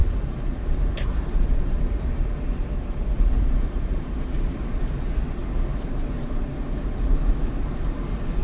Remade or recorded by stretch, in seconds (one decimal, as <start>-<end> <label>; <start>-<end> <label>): 0.0-4.8 remade; 4.8-5.7 recorded; 5.7-8.4 remade